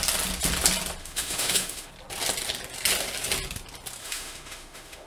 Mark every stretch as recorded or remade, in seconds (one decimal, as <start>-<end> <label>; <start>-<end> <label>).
0.0-1.0 recorded; 1.0-1.9 remade; 1.9-4.0 recorded; 4.0-5.1 remade